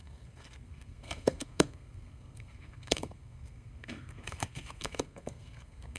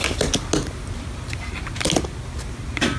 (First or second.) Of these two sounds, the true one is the second